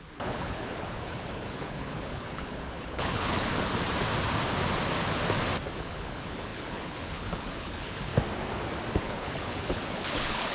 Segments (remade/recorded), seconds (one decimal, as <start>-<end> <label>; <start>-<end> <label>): 0.0-3.7 remade; 3.7-5.8 recorded; 5.8-8.1 remade; 8.1-9.0 recorded; 9.0-10.5 remade